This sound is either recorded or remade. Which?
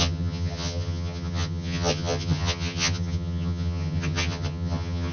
remade